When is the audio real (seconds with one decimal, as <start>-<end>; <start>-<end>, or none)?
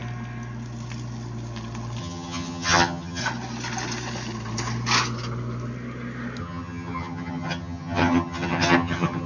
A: 0.0-2.0; 3.2-6.4